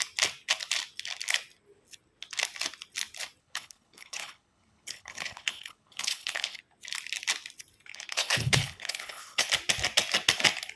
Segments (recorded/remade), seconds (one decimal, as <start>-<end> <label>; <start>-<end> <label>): 0.0-3.4 recorded; 3.4-6.6 remade; 6.6-7.9 recorded; 7.9-9.5 remade; 9.5-10.8 recorded